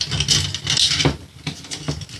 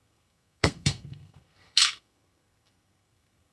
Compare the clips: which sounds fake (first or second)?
second